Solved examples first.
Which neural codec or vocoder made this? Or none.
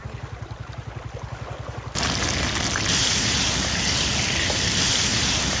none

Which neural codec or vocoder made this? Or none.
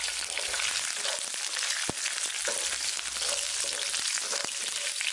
none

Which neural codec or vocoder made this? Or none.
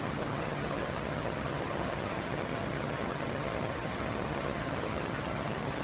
vocoder, HiFi-GAN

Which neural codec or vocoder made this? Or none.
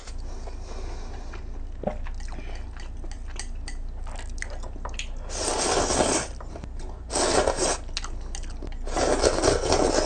none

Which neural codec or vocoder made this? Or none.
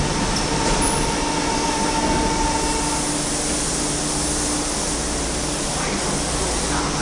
none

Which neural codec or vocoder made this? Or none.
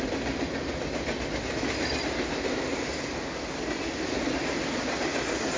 none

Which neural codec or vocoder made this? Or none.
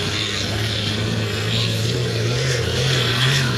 codec, SNAC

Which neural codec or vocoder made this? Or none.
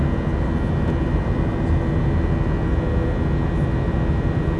none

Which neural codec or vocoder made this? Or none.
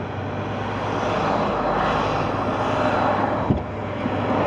none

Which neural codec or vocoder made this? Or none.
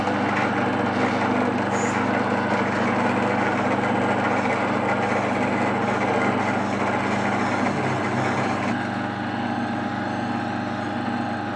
none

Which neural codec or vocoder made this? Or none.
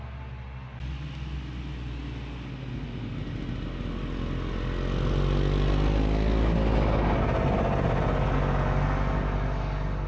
none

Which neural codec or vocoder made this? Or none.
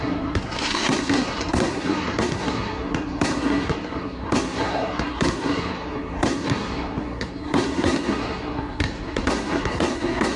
codec, SNAC